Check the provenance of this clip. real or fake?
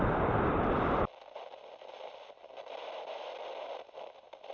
fake